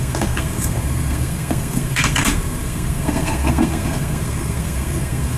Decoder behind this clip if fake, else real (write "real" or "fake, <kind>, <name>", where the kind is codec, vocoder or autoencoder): fake, codec, SNAC